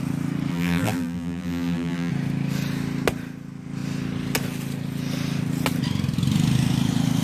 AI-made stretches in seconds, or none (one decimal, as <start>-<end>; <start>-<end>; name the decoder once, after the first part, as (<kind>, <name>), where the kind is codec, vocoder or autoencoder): 0.5-2.1 (vocoder, BigVGAN v2)